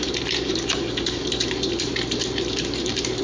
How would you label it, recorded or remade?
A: remade